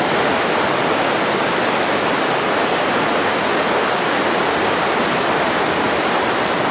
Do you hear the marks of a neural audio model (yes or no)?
no